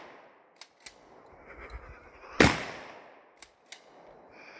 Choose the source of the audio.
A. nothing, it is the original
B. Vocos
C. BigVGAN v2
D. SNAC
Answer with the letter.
A